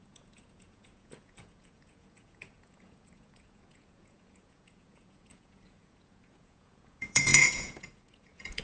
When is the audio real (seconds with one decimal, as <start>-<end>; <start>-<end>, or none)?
none

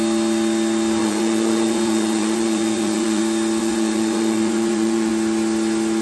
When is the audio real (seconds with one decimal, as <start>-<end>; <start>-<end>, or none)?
0.0-1.0; 3.2-3.6; 5.1-6.0

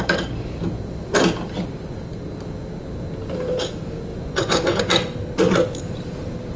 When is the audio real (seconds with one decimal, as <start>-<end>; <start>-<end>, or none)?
0.0-4.1; 4.8-6.6

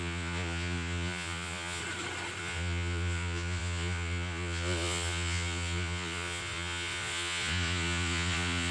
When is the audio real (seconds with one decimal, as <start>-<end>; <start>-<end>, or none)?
1.8-2.4